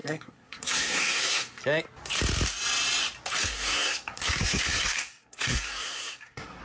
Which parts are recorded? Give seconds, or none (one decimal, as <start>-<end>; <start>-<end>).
1.6-3.4